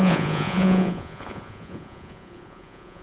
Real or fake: fake